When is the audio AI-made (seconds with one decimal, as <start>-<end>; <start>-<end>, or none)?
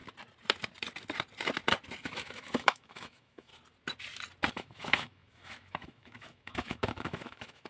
2.0-3.5; 4.5-7.7